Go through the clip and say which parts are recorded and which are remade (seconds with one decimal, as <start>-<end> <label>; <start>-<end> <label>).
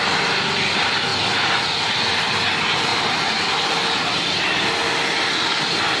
0.0-2.9 recorded; 2.9-3.8 remade; 3.8-6.0 recorded